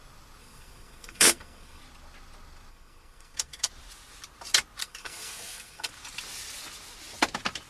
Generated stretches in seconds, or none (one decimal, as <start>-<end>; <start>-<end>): 0.4-1.8; 2.7-3.7; 4.8-5.9